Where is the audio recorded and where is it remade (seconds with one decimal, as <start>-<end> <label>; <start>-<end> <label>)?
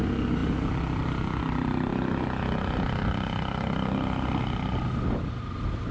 0.0-5.9 recorded